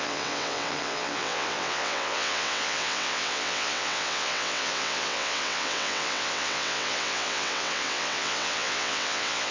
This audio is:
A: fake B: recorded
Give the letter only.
A